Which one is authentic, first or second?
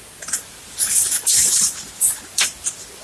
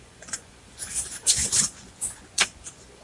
first